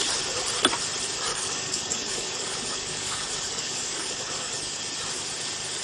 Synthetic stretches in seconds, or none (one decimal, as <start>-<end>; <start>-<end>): 1.3-4.8